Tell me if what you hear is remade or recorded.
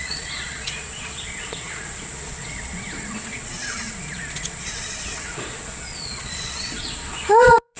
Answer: remade